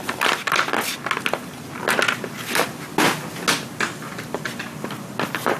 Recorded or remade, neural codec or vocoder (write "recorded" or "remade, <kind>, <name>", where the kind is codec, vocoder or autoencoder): recorded